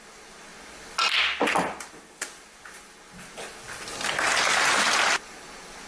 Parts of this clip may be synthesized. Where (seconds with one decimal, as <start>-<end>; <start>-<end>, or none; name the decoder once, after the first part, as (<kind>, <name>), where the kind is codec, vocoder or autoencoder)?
none

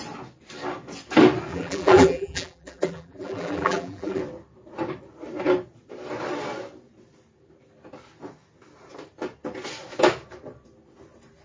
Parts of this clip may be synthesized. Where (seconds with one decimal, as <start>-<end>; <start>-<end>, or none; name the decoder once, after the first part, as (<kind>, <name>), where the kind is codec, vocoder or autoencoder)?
1.5-4.2 (vocoder, BigVGAN v2)

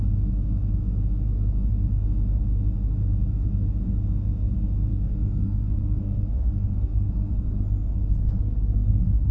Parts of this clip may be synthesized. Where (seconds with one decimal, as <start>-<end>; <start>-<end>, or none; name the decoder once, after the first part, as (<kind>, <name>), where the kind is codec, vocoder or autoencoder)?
4.9-9.3 (codec, SNAC)

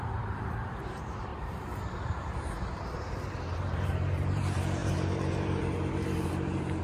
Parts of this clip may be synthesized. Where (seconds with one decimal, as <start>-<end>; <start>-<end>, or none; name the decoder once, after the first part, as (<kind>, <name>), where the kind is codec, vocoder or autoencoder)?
0.0-6.8 (vocoder, BigVGAN v2)

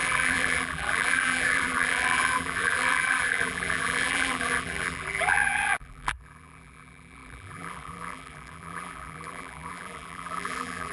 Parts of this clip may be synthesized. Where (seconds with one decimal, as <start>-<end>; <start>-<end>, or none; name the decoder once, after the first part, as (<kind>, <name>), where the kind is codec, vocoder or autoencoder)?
0.0-10.9 (vocoder, BigVGAN v2)

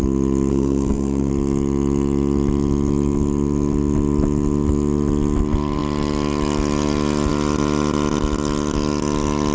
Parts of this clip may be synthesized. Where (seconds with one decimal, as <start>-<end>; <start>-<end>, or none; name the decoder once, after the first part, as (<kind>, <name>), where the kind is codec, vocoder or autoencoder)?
0.5-1.3 (codec, SNAC)

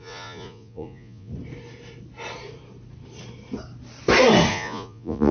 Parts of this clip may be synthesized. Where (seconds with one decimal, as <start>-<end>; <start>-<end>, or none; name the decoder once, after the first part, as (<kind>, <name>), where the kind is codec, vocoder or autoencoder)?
0.0-1.3 (vocoder, Vocos); 4.5-5.3

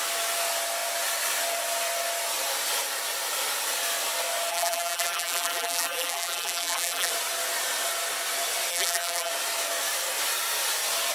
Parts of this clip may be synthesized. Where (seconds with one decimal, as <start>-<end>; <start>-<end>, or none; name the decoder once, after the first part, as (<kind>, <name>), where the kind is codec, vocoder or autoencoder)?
4.5-7.1 (vocoder, BigVGAN v2); 8.7-9.3